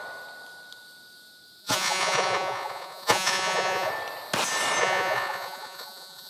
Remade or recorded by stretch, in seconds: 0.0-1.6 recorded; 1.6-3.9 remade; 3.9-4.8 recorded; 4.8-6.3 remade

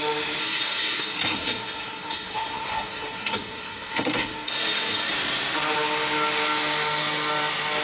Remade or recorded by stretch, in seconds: 0.0-0.4 recorded; 0.4-5.1 remade; 5.1-7.8 recorded

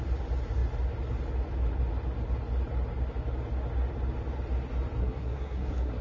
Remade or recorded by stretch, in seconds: 0.0-5.0 recorded; 5.0-6.0 remade

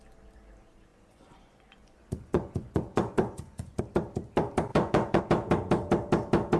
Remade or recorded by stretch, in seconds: 0.0-0.9 recorded; 0.9-3.8 remade; 3.8-4.7 recorded; 4.7-5.2 remade; 5.2-6.6 recorded

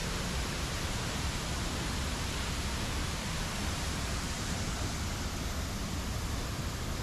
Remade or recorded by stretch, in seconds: 0.0-1.3 remade; 1.3-3.6 recorded; 3.6-4.9 remade; 4.9-7.0 recorded

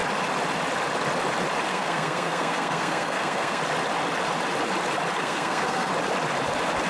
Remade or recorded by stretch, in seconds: 0.0-1.7 recorded; 1.7-3.6 remade; 3.6-5.2 recorded; 5.2-5.9 remade; 5.9-6.9 recorded

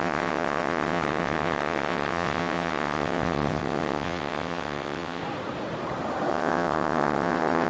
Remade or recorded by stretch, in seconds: 0.0-5.2 remade; 5.2-6.3 recorded; 6.3-7.7 remade